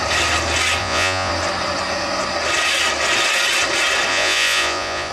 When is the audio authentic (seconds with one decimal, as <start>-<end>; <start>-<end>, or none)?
0.0-0.8; 1.3-4.1